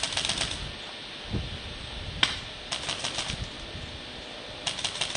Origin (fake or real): real